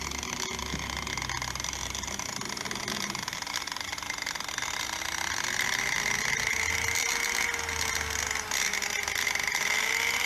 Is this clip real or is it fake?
real